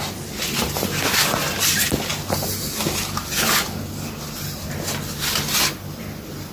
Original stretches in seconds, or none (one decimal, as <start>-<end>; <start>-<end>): 0.0-6.5